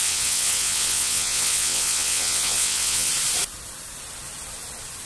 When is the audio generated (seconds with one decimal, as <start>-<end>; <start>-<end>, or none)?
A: 0.0-3.1